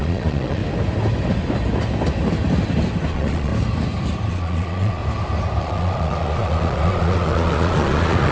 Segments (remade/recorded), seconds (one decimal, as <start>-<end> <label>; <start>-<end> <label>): 0.0-0.6 remade; 0.6-3.1 recorded; 3.1-3.5 remade; 3.5-4.3 recorded; 4.3-5.0 remade; 5.0-5.6 recorded; 5.6-8.3 remade